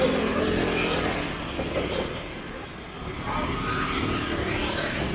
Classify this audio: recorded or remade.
recorded